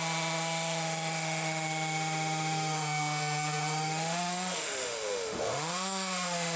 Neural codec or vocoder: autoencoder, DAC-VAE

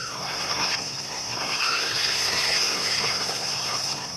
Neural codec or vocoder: codec, SNAC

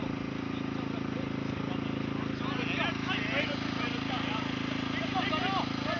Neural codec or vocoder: none